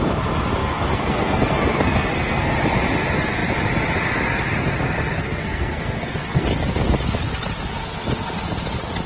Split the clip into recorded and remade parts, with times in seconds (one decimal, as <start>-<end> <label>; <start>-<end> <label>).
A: 0.0-0.6 recorded; 0.6-2.5 remade; 2.5-5.1 recorded; 5.1-6.5 remade; 6.5-9.1 recorded